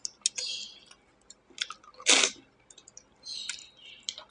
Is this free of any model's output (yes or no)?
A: yes